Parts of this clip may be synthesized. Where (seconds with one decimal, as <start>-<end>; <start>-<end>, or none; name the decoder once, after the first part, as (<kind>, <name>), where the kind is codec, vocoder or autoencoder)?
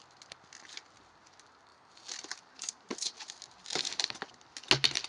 1.7-4.3 (vocoder, BigVGAN v2)